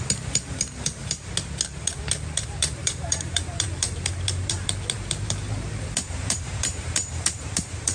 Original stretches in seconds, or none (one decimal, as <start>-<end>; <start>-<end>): 1.3-1.8